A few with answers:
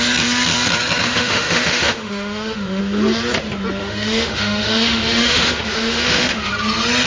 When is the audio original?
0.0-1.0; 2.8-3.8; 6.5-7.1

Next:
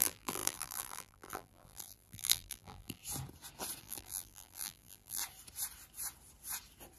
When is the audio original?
3.0-3.8; 5.2-7.0

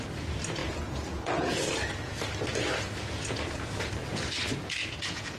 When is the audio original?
0.0-0.6; 1.7-3.0; 3.9-4.8